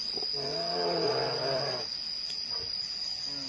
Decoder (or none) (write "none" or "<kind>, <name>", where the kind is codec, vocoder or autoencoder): none